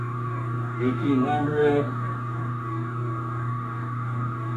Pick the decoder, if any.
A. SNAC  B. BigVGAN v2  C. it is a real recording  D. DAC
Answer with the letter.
D